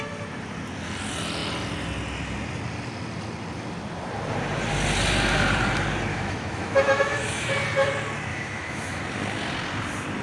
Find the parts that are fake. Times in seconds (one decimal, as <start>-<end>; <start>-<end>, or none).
6.1-7.5; 8.3-9.0

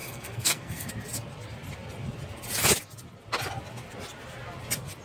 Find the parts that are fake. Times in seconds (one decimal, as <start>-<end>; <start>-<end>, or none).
0.0-0.9

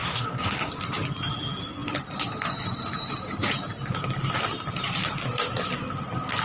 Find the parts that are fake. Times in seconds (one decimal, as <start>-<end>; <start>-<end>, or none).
0.0-0.7

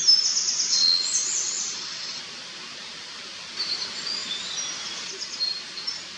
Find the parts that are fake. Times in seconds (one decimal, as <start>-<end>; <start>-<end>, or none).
0.7-2.2

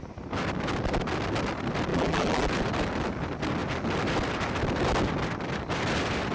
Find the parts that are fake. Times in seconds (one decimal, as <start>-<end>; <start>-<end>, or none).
1.9-2.5

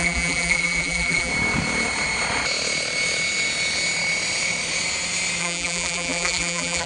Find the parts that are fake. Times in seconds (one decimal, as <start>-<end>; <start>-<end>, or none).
0.0-1.3; 5.4-6.9